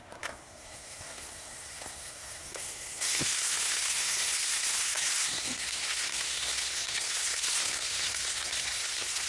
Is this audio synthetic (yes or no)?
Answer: yes